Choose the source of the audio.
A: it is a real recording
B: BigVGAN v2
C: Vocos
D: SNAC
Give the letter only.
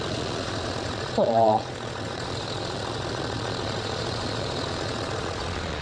C